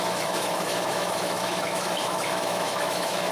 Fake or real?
fake